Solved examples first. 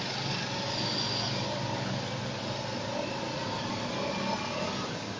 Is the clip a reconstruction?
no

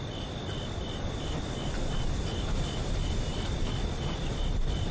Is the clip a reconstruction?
no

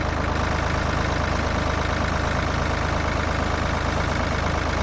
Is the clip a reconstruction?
no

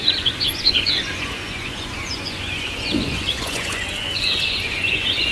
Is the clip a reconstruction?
yes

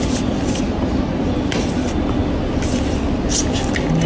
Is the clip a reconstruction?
no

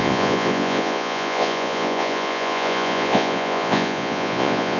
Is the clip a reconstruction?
yes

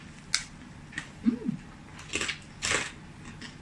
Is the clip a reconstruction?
no